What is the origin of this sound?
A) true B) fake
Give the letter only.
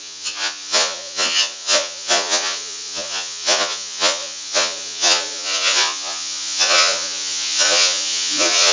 B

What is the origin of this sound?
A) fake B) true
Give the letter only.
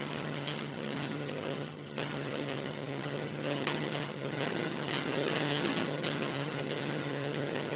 A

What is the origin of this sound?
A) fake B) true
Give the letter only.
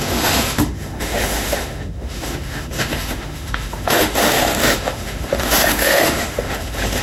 A